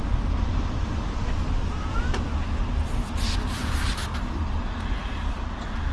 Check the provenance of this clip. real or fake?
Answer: real